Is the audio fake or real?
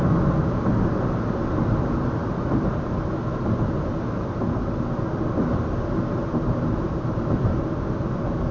real